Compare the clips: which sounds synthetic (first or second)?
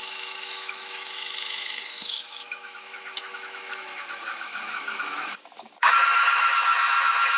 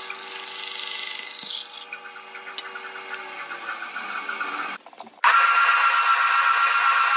first